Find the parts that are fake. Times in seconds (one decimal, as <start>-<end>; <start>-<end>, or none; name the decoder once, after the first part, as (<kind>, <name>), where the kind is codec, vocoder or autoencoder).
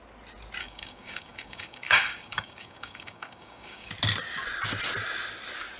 0.6-3.9 (codec, DAC)